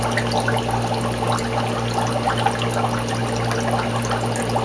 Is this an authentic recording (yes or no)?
yes